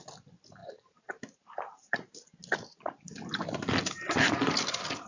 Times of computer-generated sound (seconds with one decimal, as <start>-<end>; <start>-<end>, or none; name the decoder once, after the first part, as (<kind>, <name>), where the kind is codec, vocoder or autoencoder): 0.6-2.1 (vocoder, BigVGAN v2)